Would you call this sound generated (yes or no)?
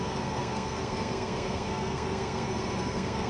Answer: yes